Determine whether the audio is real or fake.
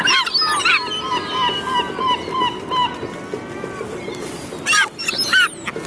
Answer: real